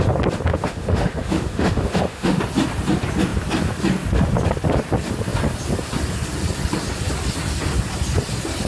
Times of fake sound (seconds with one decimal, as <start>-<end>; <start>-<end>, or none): 0.5-2.4